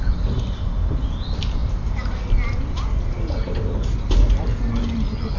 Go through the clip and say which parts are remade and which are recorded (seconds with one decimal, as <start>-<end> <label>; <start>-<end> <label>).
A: 0.0-5.4 recorded